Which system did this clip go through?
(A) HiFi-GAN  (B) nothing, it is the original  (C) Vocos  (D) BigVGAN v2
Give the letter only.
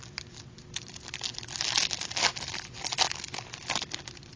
B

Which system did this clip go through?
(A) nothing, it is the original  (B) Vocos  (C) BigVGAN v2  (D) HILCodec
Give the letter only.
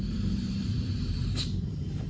C